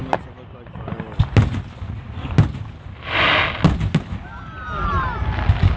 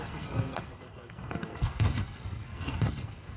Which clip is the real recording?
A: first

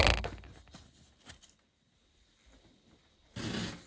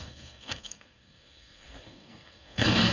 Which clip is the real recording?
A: first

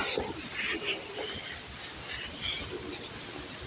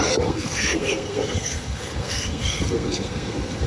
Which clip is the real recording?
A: first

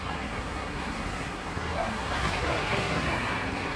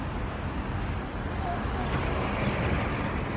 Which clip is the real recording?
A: second